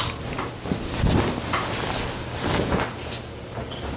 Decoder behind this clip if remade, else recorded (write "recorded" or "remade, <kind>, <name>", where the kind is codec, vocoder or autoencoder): recorded